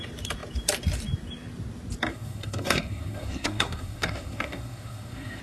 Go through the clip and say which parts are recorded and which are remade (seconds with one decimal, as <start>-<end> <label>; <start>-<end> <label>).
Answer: 0.0-2.1 recorded; 2.1-5.4 remade